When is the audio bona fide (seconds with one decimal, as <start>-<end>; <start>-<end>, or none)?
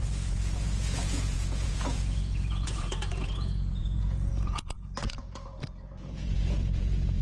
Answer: none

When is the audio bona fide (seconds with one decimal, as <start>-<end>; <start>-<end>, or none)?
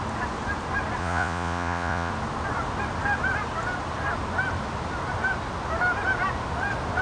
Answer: 0.0-1.0; 2.1-7.0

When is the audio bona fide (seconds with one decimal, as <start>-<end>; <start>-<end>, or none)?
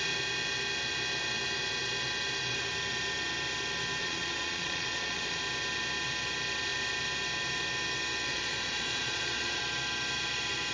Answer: 0.0-4.0; 5.4-8.3; 9.6-10.7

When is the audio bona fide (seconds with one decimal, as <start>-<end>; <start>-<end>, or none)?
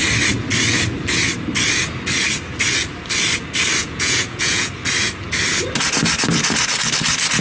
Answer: 0.0-3.8; 4.7-7.4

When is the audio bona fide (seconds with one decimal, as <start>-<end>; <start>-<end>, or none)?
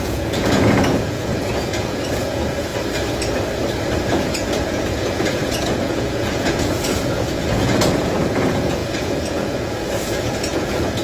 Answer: 2.7-4.1